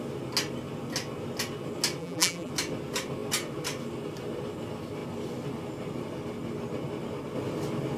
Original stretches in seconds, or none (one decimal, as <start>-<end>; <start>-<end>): 0.0-2.0; 2.5-8.0